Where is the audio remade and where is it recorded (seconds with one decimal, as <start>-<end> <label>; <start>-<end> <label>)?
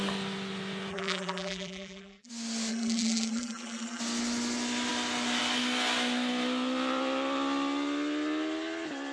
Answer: 0.0-0.9 recorded; 0.9-2.3 remade; 2.3-2.7 recorded; 2.7-4.0 remade; 4.0-9.1 recorded